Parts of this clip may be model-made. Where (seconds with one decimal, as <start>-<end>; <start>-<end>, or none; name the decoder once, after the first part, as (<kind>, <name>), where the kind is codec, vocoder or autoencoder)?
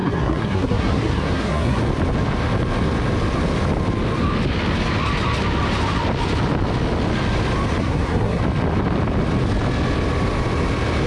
0.0-1.8 (codec, SNAC); 7.8-8.4